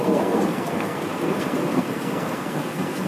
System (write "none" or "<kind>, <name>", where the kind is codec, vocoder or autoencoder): codec, SNAC